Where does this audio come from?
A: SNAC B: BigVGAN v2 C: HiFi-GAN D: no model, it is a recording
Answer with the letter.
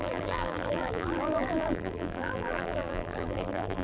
B